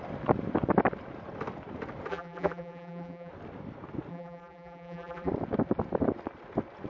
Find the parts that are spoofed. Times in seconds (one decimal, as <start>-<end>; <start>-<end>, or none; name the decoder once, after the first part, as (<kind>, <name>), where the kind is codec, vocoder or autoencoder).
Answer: 2.1-3.3 (vocoder, BigVGAN v2); 4.1-5.3